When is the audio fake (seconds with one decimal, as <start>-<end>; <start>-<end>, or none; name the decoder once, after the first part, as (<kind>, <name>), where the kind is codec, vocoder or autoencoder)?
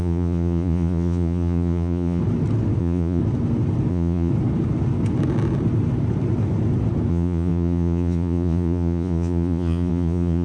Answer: 0.0-2.2 (vocoder, Vocos); 2.8-3.2; 3.9-4.3; 7.1-10.4